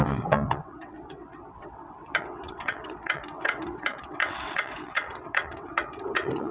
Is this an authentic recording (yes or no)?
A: no